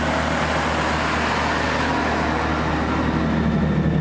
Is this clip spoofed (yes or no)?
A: no